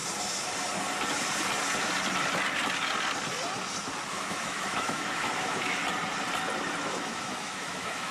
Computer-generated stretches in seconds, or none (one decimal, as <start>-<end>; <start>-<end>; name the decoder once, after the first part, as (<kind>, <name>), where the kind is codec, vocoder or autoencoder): 4.1-5.8 (autoencoder, DAC-VAE); 6.8-8.1

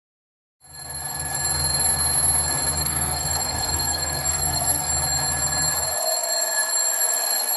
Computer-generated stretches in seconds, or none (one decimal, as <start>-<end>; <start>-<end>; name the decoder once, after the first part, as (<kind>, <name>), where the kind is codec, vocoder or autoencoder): 2.8-4.9 (codec, SNAC)

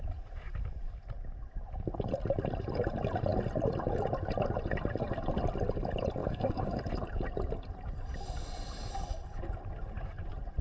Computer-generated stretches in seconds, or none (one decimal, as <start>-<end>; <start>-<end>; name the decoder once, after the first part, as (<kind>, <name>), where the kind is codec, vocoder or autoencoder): 6.2-6.8 (codec, DAC)

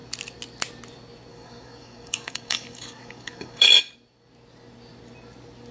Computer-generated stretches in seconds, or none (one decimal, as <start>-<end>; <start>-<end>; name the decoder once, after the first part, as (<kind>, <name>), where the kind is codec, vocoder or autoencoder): 1.3-3.7 (codec, DAC)

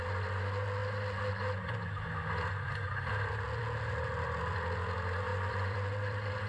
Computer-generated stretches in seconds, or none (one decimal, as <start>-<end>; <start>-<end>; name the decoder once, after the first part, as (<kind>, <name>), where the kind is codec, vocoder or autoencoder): 5.3-6.5 (vocoder, BigVGAN v2)

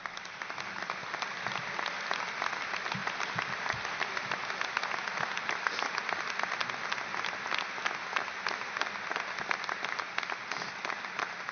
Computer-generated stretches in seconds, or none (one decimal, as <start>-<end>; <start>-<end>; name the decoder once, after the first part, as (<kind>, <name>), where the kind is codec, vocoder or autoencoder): 3.0-6.8 (vocoder, BigVGAN v2)